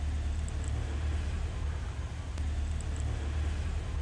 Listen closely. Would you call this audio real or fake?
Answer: real